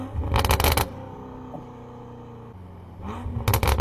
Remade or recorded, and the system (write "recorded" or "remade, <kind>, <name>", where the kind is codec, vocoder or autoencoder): recorded